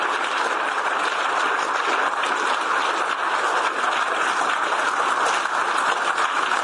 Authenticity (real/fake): real